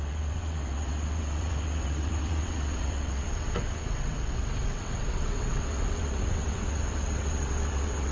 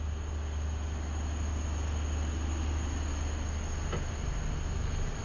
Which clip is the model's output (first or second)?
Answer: first